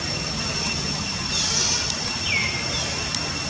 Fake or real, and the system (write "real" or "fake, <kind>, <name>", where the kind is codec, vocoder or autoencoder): real